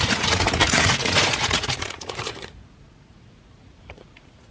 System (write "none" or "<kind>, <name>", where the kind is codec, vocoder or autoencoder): vocoder, Vocos